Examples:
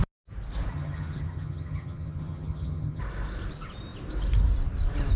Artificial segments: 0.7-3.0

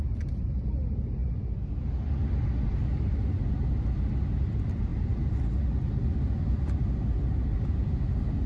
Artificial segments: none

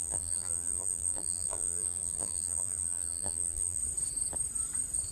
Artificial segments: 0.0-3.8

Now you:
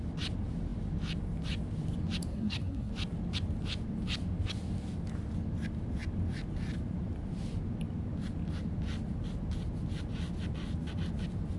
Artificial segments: 2.3-2.9